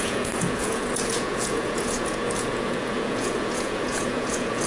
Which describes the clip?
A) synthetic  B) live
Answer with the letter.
A